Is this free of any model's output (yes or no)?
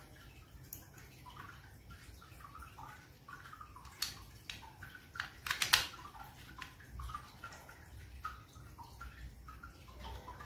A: yes